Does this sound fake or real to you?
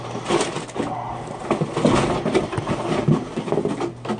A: real